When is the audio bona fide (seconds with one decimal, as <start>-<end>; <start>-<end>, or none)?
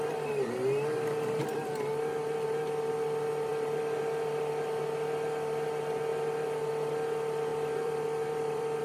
0.0-3.5; 4.1-7.5